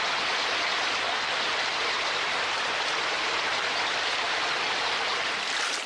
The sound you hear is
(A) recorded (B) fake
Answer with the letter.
A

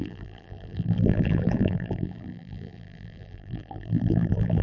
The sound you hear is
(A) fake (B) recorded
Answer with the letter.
A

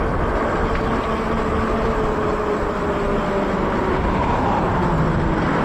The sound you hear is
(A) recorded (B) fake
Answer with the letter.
A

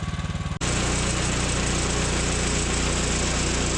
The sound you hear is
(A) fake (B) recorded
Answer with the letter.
B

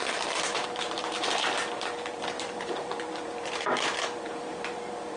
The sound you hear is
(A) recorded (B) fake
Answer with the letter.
B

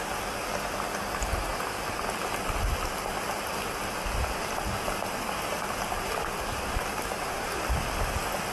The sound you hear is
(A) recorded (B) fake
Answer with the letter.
B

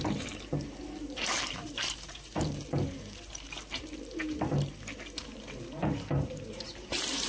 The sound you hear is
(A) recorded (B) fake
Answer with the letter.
B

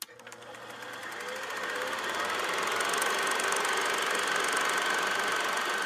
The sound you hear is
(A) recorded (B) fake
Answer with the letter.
A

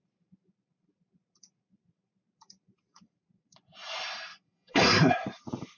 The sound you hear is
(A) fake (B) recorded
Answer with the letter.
A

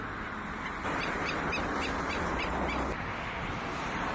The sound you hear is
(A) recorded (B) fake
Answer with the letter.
A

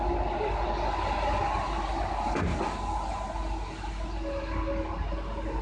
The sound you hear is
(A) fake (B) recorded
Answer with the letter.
B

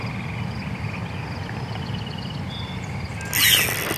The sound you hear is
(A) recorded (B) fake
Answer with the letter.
A